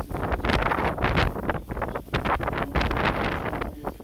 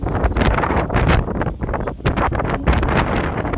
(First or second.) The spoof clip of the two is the second